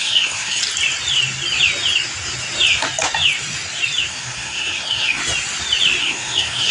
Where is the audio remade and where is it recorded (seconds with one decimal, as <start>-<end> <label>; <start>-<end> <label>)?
0.0-0.6 remade; 0.6-4.1 recorded; 4.1-5.2 remade; 5.2-6.0 recorded; 6.0-6.7 remade